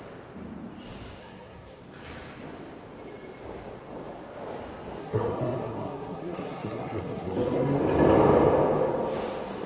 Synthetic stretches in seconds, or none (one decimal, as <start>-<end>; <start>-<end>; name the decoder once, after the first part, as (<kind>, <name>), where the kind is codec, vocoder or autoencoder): 1.2-1.8 (codec, SNAC); 5.0-7.8